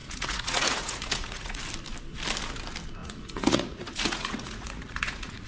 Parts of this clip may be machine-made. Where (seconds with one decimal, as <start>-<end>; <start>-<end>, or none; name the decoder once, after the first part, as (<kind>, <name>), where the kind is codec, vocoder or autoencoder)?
0.0-1.6 (vocoder, Vocos); 3.0-5.5